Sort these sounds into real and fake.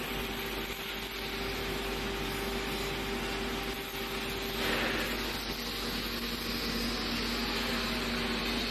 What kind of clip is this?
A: real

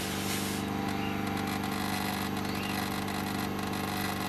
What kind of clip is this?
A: real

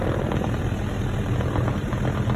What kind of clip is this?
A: real